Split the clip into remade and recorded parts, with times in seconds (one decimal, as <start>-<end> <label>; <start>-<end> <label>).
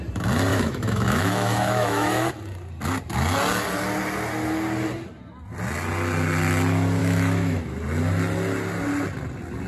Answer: 0.0-0.5 recorded; 0.5-2.3 remade; 2.3-7.0 recorded; 7.0-7.6 remade; 7.6-9.7 recorded